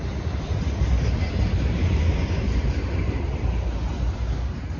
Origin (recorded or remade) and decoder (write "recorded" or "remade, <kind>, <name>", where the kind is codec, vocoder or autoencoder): recorded